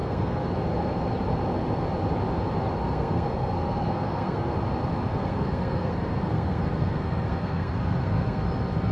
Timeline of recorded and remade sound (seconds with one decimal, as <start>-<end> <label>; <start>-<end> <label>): 0.0-0.5 remade; 0.5-2.8 recorded; 2.8-4.5 remade; 4.5-5.1 recorded; 5.1-8.4 remade; 8.4-8.9 recorded